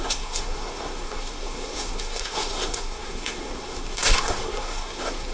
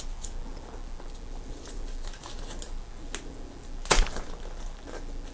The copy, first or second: first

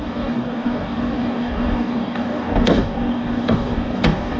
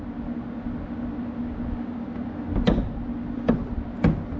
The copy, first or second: first